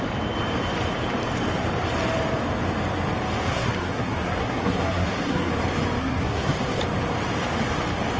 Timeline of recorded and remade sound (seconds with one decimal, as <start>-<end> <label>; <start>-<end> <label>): 0.0-3.5 recorded; 3.5-5.5 remade; 5.5-6.0 recorded; 6.0-6.8 remade; 6.8-8.2 recorded

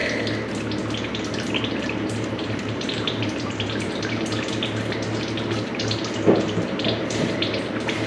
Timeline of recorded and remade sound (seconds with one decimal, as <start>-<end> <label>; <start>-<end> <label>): 0.0-1.3 recorded; 1.3-8.1 remade

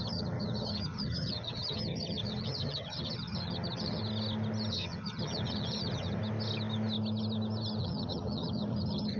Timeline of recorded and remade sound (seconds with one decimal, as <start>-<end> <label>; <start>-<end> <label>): 0.0-4.0 remade; 4.0-4.7 recorded; 4.7-6.2 remade; 6.2-7.8 recorded; 7.8-9.2 remade

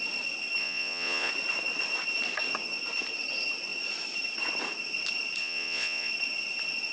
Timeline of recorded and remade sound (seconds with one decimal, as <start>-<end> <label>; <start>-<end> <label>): 0.0-0.6 recorded; 0.6-1.3 remade; 1.3-5.4 recorded; 5.4-6.1 remade; 6.1-6.9 recorded